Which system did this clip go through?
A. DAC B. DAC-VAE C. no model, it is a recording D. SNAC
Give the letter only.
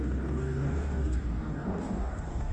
A